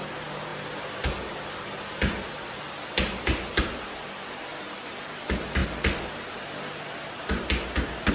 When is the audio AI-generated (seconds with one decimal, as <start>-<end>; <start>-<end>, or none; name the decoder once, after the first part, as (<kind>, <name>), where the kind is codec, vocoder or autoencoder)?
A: none